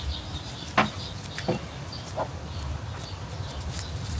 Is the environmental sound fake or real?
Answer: real